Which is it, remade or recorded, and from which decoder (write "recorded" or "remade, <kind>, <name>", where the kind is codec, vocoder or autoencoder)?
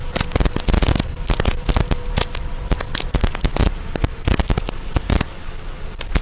recorded